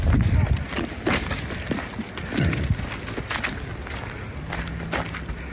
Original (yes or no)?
yes